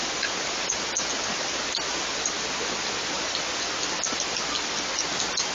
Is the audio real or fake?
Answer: real